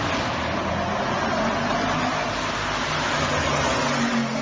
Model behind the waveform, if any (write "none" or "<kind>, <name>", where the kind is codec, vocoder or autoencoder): none